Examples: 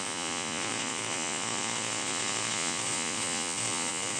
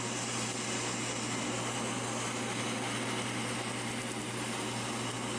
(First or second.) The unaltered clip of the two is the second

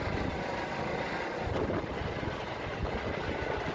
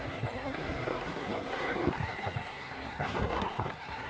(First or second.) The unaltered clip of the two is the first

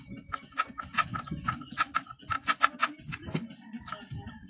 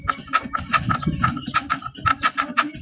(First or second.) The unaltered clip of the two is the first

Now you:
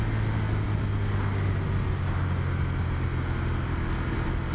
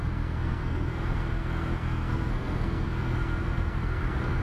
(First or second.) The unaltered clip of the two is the first